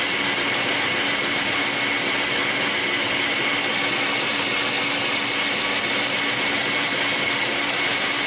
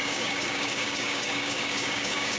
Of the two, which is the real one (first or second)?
first